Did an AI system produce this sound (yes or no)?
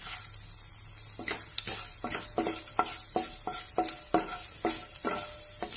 no